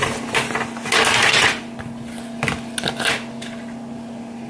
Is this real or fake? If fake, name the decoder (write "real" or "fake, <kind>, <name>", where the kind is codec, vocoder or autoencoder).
real